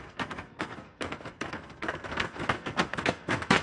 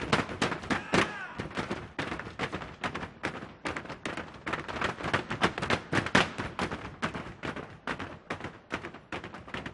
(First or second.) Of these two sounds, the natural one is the second